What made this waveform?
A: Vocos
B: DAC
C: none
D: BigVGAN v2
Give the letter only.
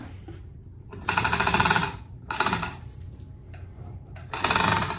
D